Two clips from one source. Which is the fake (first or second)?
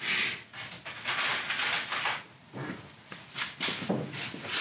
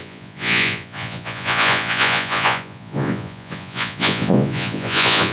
second